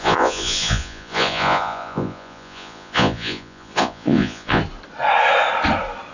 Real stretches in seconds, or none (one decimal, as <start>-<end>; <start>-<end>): 4.6-6.1